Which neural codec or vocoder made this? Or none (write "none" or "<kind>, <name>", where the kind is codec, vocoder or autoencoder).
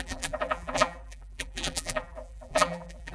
vocoder, BigVGAN v2